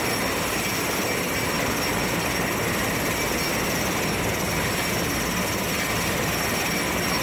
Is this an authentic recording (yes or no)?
yes